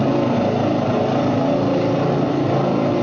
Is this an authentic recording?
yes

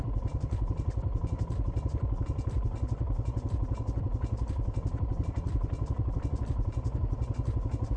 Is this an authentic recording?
yes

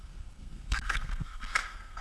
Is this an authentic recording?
no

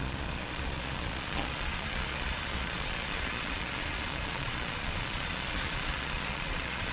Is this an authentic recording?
no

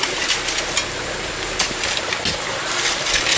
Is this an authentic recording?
yes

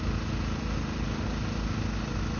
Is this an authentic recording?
yes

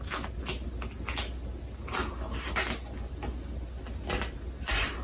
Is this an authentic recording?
yes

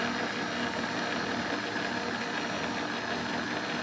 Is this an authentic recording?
yes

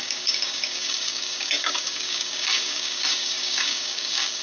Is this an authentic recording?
no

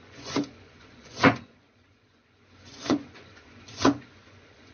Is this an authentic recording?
no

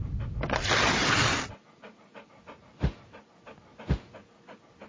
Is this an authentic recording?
yes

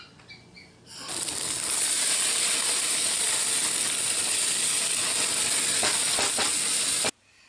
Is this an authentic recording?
yes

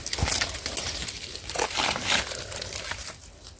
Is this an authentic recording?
yes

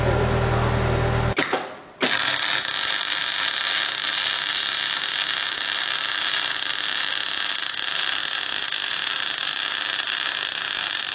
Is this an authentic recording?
yes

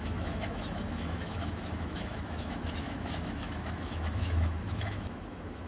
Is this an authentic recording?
no